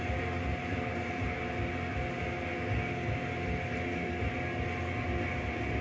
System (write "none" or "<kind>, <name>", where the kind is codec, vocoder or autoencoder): none